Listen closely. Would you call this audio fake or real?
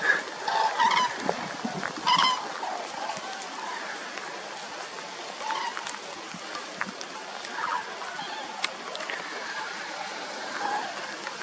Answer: real